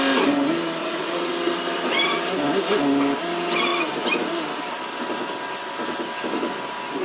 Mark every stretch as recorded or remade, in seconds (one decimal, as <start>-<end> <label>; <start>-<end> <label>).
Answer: 0.0-0.8 recorded; 0.8-1.3 remade; 1.3-7.0 recorded